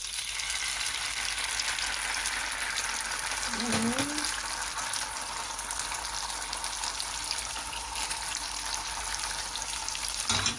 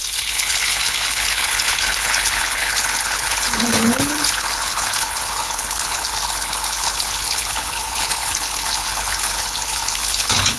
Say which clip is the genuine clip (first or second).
first